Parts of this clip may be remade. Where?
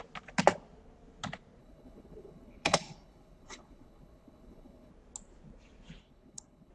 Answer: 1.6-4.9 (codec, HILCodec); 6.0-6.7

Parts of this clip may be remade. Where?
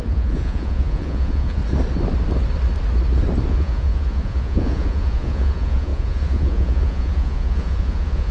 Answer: 0.0-1.6 (vocoder, Vocos); 3.5-8.3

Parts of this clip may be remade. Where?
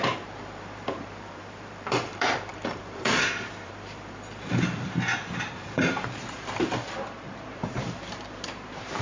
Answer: 0.0-9.0 (vocoder, BigVGAN v2)